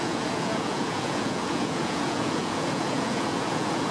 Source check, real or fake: fake